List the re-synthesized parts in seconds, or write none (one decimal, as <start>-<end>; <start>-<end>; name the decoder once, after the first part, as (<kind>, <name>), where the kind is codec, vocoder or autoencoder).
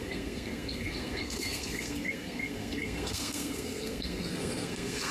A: 0.0-5.1 (codec, SNAC)